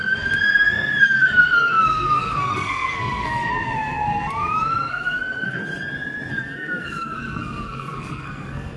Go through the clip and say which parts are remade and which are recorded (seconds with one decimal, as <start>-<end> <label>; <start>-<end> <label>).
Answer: 0.0-5.6 remade; 5.6-6.3 recorded; 6.3-8.8 remade